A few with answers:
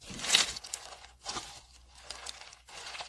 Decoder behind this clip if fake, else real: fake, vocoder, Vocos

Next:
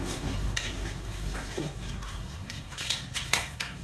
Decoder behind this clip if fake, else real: fake, codec, SNAC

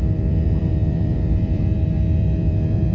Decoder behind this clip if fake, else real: fake, vocoder, BigVGAN v2